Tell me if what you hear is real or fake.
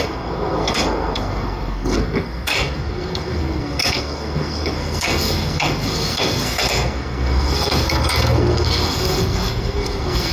fake